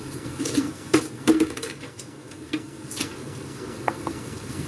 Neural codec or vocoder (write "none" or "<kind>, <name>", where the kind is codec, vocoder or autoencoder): codec, SNAC